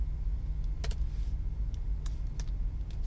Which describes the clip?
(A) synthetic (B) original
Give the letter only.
B